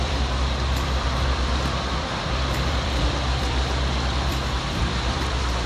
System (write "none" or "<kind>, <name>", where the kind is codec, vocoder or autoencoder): vocoder, BigVGAN v2